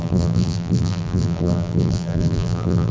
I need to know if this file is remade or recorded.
remade